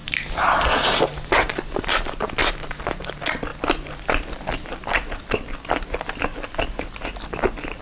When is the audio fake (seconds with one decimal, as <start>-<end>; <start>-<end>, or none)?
none